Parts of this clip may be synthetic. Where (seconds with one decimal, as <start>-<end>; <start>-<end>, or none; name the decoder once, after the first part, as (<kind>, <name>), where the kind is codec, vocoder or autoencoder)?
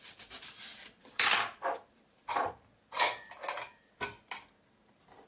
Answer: 0.7-3.9 (vocoder, BigVGAN v2)